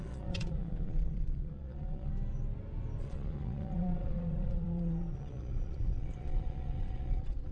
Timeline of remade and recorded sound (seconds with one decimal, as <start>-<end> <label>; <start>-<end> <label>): 0.0-2.1 remade; 2.1-3.0 recorded; 3.0-7.5 remade

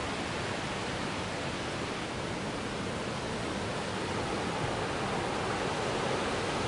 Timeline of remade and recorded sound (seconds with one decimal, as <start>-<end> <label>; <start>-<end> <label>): 0.0-6.7 recorded

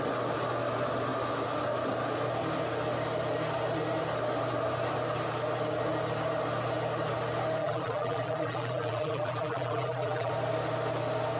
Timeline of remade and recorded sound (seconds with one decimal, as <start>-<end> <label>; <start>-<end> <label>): 0.0-7.6 recorded; 7.6-10.3 remade; 10.3-11.4 recorded

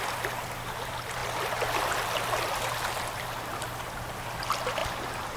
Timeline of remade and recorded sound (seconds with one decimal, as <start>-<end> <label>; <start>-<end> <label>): 0.0-4.8 recorded; 4.8-5.4 remade

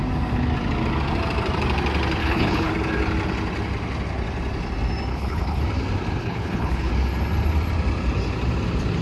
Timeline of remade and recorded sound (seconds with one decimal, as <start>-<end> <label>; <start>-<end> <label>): 0.0-2.2 recorded; 2.2-2.7 remade; 2.7-5.1 recorded; 5.1-5.6 remade; 5.6-6.2 recorded; 6.2-6.9 remade; 6.9-9.0 recorded

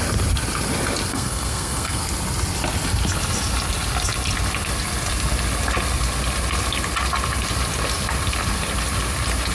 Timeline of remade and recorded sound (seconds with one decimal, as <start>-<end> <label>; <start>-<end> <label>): 0.0-1.1 recorded; 1.1-2.0 remade; 2.0-9.5 recorded